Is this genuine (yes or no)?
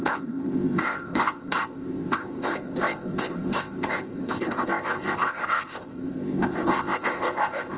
no